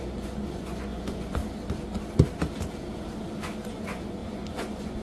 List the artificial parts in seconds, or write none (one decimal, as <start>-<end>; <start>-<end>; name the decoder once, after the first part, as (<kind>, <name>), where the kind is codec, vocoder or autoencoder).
0.0-1.4 (vocoder, Vocos); 3.7-5.0